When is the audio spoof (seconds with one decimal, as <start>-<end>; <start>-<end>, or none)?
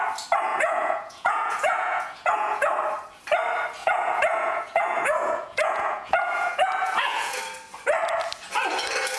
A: 0.5-2.7; 3.8-7.4